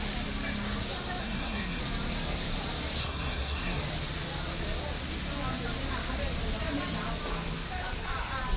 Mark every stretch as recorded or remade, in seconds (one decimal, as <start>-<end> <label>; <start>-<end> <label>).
0.0-1.2 recorded; 1.2-1.8 remade; 1.8-3.0 recorded; 3.0-3.8 remade; 3.8-8.6 recorded